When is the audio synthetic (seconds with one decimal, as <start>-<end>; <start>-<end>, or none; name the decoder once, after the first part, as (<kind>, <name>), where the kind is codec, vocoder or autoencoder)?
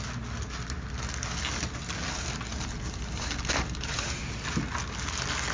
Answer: 2.5-3.4 (vocoder, BigVGAN v2)